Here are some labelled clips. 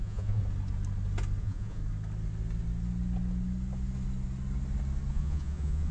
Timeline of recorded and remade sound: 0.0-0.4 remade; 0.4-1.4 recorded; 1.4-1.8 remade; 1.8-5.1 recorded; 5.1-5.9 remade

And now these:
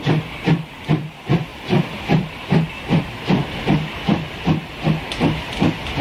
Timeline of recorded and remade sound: 0.0-6.0 recorded

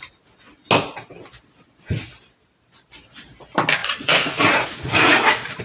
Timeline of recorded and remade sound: 0.0-3.8 recorded; 3.8-5.6 remade

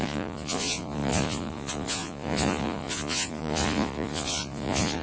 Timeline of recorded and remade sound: 0.0-5.0 remade

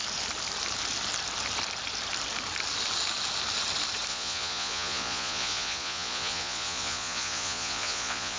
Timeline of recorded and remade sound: 0.0-4.1 recorded; 4.1-8.4 remade